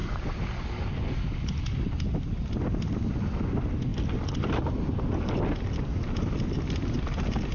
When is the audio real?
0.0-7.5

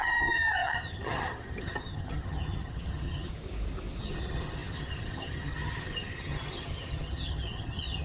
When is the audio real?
3.3-4.0

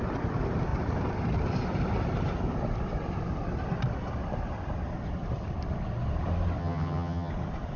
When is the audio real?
0.0-6.6; 7.3-7.8

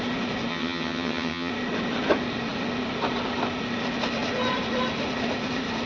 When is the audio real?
0.0-0.5; 1.5-5.9